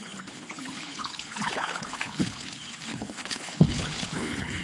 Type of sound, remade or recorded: remade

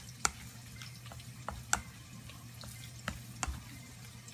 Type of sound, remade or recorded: recorded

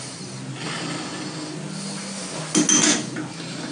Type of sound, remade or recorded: recorded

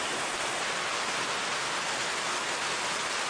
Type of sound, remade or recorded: recorded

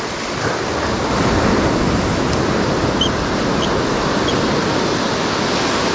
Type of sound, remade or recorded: recorded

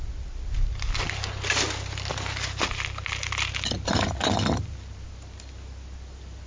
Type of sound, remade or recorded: recorded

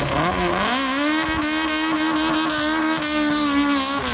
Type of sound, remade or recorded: recorded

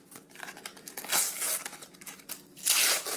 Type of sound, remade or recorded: recorded